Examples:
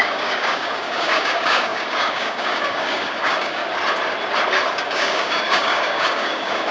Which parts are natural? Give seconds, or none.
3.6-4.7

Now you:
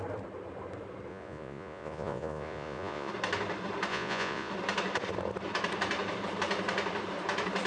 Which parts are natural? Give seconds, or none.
0.0-1.1; 3.1-3.9; 4.5-7.7

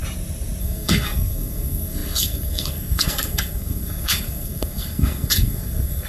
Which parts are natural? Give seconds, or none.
0.0-0.6